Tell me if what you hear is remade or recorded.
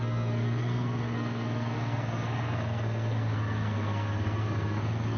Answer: remade